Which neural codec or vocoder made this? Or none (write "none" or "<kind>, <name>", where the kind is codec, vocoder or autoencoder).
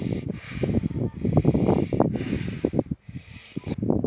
none